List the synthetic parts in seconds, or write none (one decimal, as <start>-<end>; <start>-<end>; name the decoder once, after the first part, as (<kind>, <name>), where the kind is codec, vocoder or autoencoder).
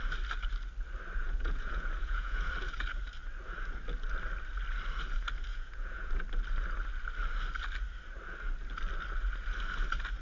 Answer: 1.2-2.5 (vocoder, Vocos); 5.5-6.1